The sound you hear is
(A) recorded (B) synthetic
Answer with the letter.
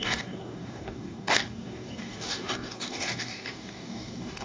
B